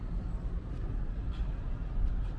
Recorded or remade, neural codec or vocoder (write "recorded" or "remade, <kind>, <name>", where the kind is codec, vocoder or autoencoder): recorded